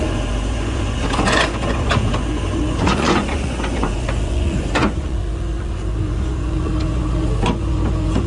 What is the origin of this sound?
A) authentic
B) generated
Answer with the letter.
B